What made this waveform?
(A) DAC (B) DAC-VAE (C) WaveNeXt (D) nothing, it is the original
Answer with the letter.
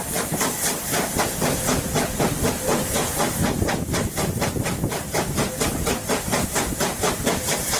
D